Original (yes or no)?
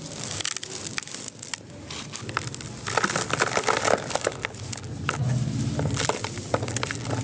yes